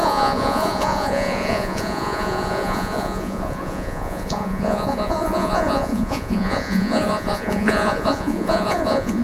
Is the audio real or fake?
fake